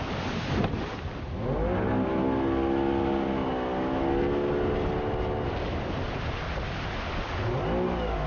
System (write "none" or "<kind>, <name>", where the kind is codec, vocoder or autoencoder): none